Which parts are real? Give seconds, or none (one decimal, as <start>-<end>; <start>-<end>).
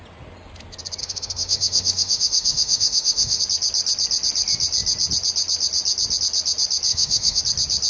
0.0-1.0; 3.4-6.9; 7.4-7.9